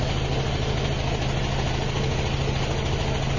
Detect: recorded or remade recorded